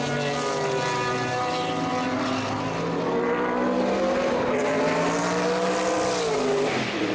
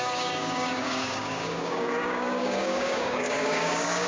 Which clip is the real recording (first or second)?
first